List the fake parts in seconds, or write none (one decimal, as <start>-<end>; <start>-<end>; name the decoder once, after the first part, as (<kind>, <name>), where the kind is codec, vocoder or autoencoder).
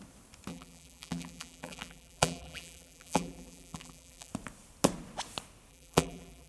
0.5-4.3 (vocoder, BigVGAN v2); 5.7-6.5